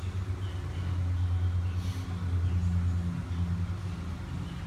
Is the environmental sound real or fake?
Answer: real